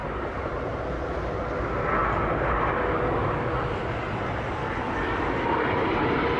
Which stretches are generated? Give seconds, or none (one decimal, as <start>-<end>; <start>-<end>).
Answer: 0.0-0.9